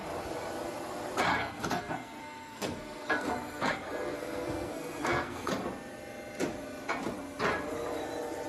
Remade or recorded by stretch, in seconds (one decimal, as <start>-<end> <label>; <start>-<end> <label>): 0.0-1.3 recorded; 1.3-5.5 remade; 5.5-8.5 recorded